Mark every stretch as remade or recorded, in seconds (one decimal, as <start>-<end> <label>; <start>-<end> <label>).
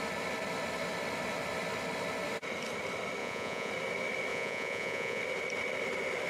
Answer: 0.0-3.2 recorded; 3.2-3.7 remade; 3.7-4.3 recorded; 4.3-5.2 remade; 5.2-6.3 recorded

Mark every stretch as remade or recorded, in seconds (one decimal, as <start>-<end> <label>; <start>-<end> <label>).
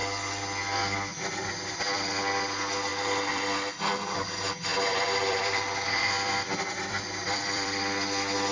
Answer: 0.0-1.1 recorded; 1.1-2.1 remade; 2.1-2.9 recorded; 2.9-3.8 remade; 3.8-4.7 recorded; 4.7-7.8 remade; 7.8-8.5 recorded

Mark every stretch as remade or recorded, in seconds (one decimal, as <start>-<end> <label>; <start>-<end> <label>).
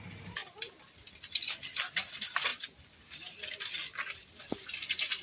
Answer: 0.0-5.2 recorded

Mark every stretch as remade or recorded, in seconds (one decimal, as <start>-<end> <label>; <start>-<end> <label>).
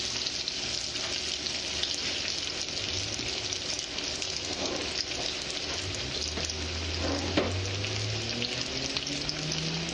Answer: 0.0-4.2 recorded; 4.2-4.7 remade; 4.7-9.9 recorded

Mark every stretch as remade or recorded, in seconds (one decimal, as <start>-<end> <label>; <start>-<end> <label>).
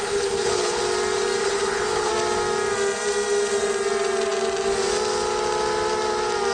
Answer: 0.0-0.8 remade; 0.8-1.4 recorded; 1.4-2.1 remade; 2.1-6.5 recorded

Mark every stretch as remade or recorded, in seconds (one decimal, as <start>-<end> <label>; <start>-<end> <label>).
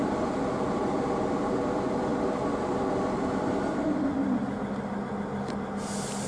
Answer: 0.0-6.3 recorded